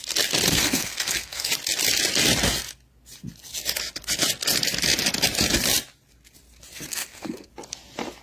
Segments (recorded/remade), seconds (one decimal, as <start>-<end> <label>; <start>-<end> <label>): 0.0-0.5 recorded; 0.5-1.5 remade; 1.5-6.9 recorded; 6.9-7.5 remade; 7.5-8.2 recorded